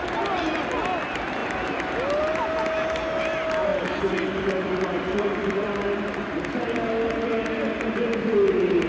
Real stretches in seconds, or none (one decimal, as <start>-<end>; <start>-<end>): 0.0-3.7; 6.4-8.9